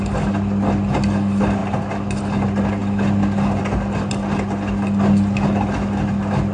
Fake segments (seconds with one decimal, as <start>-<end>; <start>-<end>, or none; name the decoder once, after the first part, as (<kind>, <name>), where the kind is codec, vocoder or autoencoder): none